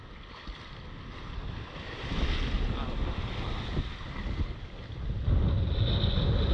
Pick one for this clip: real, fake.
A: real